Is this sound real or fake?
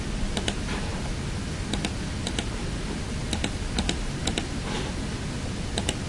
real